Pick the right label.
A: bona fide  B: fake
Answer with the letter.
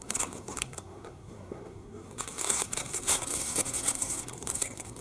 B